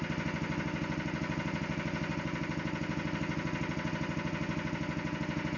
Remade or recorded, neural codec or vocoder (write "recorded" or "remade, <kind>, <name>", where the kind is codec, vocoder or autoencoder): recorded